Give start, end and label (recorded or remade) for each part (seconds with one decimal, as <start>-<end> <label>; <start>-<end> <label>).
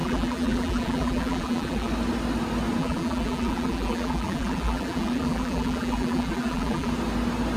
0.0-1.9 remade; 1.9-2.8 recorded; 2.8-6.9 remade; 6.9-7.6 recorded